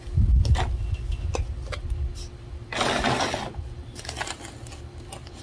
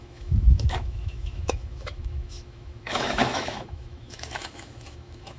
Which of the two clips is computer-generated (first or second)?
second